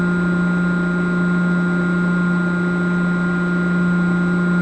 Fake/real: real